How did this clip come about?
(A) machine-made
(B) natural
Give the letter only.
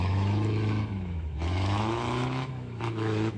A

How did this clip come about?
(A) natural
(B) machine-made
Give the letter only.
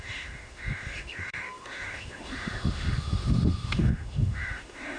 B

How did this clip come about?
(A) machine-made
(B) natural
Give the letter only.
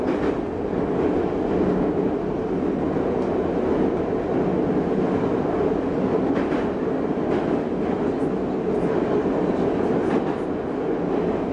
B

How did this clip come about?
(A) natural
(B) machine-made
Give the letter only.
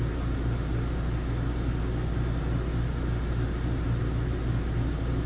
A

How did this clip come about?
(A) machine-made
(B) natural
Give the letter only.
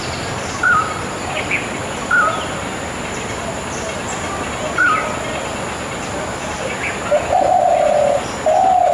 B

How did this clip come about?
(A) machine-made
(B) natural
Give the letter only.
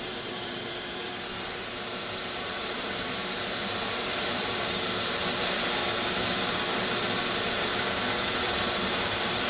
A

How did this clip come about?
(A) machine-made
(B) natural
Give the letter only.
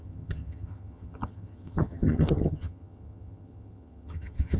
A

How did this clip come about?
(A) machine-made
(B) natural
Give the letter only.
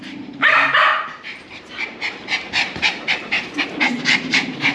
A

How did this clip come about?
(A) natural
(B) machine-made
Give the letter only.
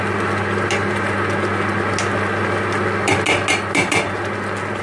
A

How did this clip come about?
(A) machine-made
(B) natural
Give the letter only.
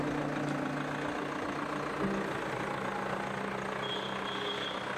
B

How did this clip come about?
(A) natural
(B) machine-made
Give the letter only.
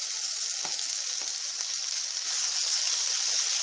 A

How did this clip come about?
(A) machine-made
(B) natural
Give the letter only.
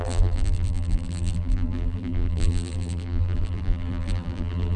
A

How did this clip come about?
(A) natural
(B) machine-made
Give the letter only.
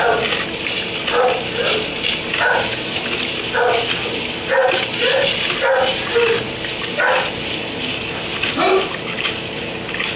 A